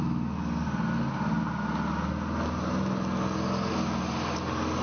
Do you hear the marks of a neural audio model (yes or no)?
no